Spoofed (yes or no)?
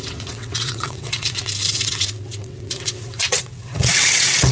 yes